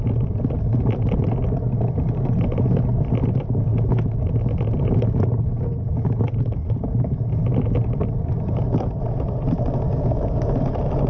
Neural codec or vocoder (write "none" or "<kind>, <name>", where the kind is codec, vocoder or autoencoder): none